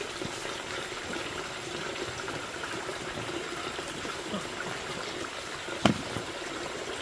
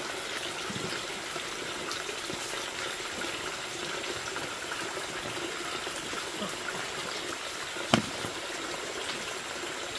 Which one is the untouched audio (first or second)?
second